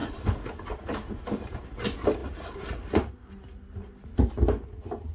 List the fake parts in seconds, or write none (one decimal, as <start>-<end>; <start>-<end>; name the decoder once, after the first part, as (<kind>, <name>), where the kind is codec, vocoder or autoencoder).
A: 0.0-1.6 (vocoder, BigVGAN v2); 2.2-3.1